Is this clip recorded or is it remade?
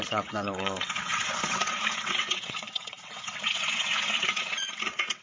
remade